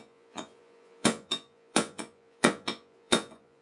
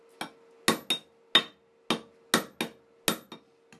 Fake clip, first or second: first